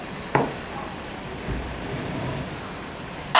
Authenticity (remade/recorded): remade